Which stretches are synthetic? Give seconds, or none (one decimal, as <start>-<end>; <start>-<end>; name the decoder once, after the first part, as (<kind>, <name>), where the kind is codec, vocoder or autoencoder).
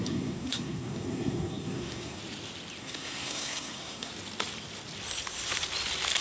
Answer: 0.0-2.2 (codec, SNAC); 2.8-4.1